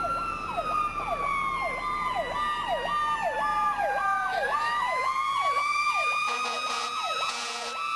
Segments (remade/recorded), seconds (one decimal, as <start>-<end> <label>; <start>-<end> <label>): 0.0-3.5 recorded; 3.5-8.0 remade